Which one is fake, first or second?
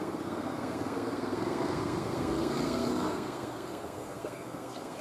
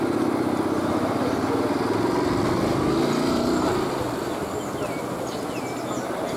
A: first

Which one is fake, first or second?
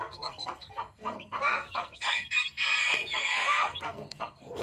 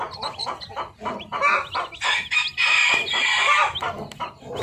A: first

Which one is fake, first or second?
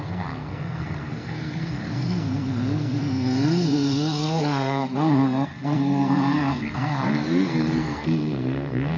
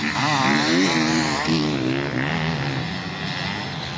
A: first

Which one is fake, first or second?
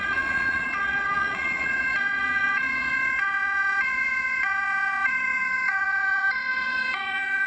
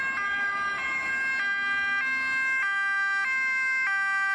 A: first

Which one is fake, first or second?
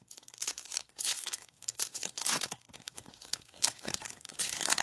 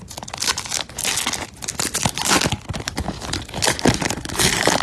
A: first